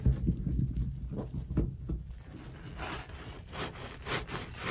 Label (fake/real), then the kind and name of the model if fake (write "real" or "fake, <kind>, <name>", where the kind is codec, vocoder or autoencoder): real